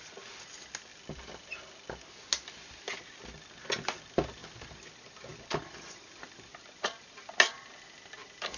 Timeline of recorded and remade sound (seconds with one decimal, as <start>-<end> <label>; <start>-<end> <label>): 0.0-8.6 recorded